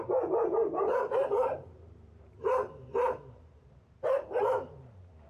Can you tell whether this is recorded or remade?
remade